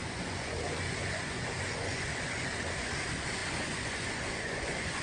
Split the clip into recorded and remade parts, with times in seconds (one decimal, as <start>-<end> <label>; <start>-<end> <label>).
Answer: 0.0-5.0 remade